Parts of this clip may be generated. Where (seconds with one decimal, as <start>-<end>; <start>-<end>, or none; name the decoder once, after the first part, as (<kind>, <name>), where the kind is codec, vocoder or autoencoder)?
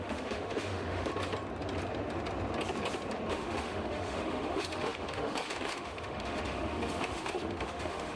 0.0-1.1 (autoencoder, DAC-VAE); 3.3-8.2